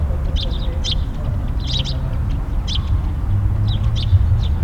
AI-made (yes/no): no